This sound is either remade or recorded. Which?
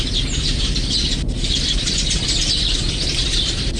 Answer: recorded